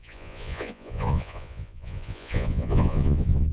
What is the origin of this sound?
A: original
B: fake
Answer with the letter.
B